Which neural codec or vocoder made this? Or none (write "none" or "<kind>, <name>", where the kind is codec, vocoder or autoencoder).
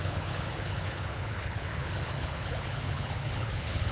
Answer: codec, HILCodec